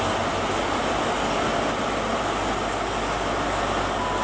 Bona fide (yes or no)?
yes